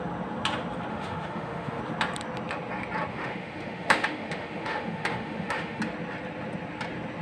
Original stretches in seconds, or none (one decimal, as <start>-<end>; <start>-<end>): 0.0-0.9; 1.8-3.1; 5.8-7.2